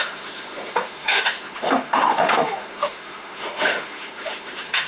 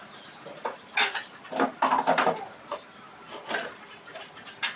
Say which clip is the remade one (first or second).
first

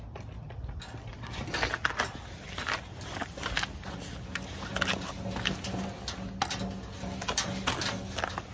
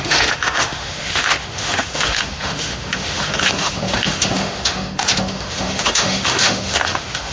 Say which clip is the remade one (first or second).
second